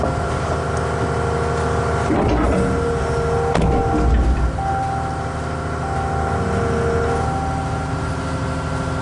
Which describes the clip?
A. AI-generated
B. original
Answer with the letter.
B